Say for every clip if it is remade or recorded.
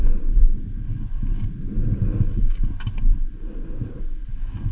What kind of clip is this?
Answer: recorded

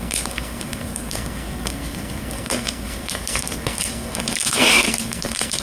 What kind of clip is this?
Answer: remade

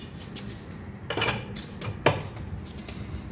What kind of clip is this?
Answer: recorded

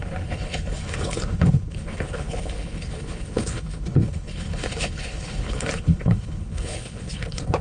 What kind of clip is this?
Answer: remade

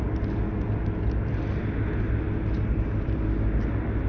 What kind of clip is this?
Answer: recorded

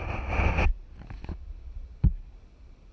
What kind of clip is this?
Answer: recorded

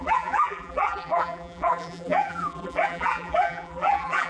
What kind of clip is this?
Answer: remade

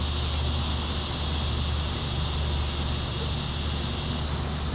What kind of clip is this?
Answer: recorded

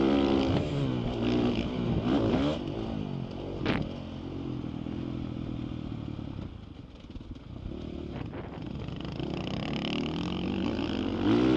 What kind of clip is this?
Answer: recorded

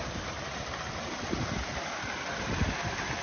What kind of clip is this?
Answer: remade